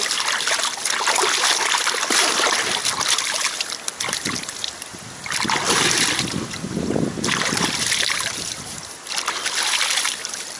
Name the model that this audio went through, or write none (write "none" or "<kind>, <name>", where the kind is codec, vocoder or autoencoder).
none